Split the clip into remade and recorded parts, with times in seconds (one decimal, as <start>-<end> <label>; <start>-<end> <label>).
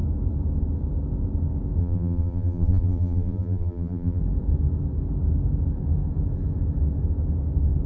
0.0-1.8 recorded; 1.8-4.2 remade; 4.2-7.9 recorded